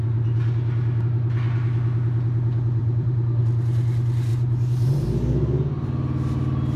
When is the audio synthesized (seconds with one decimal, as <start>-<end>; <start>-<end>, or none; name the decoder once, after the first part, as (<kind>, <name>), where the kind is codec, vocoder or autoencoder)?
2.8-3.4 (vocoder, BigVGAN v2); 4.3-5.0